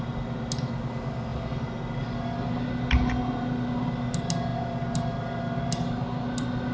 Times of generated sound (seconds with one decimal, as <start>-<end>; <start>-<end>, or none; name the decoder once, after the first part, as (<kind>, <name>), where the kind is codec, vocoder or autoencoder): none